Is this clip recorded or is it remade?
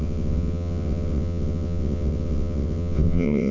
remade